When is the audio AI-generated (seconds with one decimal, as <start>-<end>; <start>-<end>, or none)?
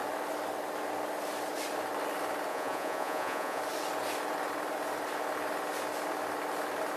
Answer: 2.5-3.6